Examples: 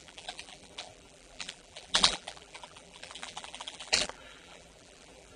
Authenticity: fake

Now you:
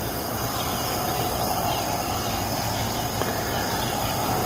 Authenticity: real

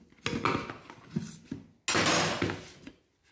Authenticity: real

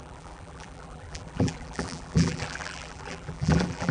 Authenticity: fake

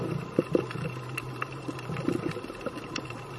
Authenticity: fake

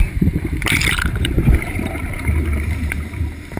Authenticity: fake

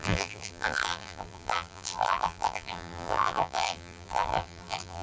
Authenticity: fake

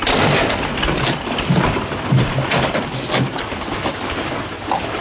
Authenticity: real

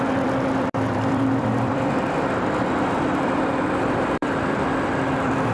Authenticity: fake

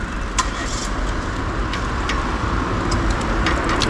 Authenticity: real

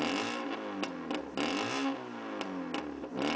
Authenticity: real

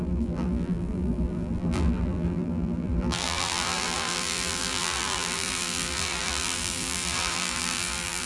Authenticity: fake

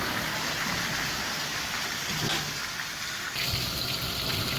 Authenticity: real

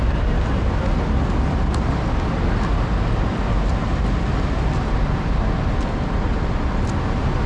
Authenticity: real